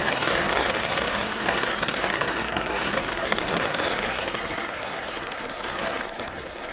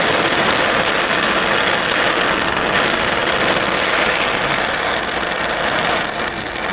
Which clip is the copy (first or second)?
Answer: first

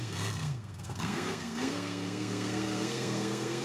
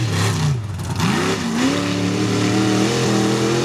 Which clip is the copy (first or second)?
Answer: first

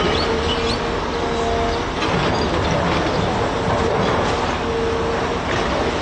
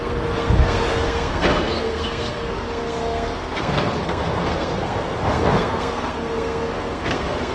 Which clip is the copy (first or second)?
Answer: second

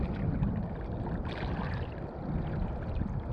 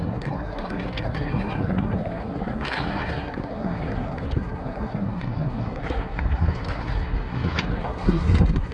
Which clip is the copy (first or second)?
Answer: second